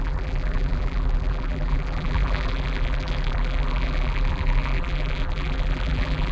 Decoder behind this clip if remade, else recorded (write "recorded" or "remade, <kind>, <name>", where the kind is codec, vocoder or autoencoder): remade, vocoder, BigVGAN v2